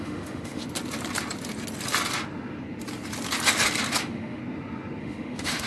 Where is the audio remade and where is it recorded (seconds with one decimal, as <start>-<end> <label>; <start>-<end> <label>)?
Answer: 0.0-0.6 remade; 0.6-4.0 recorded; 4.0-4.4 remade; 4.4-5.0 recorded; 5.0-5.7 remade